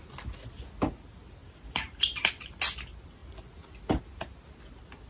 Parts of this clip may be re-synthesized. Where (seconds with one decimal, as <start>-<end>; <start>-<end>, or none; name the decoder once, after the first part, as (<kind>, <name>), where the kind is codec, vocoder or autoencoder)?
1.4-2.3 (vocoder, BigVGAN v2)